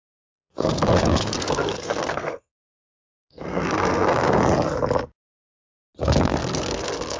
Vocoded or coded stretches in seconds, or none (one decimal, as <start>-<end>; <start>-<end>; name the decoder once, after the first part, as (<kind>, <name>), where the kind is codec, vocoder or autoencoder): 0.0-4.4 (codec, SNAC); 6.0-7.2